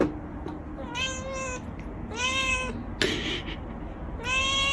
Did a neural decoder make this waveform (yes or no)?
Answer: no